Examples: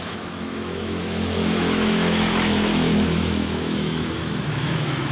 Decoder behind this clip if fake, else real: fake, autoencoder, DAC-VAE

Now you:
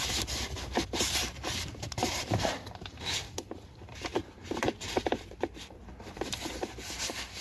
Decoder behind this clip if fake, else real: fake, vocoder, BigVGAN v2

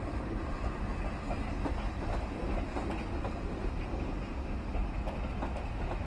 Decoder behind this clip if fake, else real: real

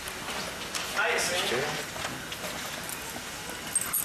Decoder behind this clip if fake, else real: real